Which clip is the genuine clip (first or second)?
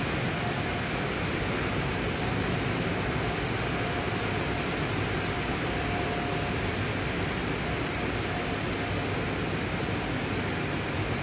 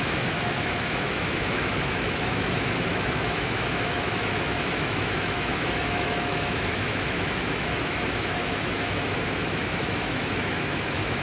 first